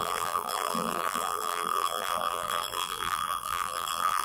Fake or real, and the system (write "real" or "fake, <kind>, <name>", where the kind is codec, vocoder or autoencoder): fake, vocoder, BigVGAN v2